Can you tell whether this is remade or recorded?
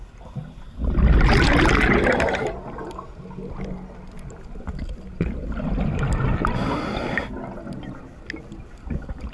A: recorded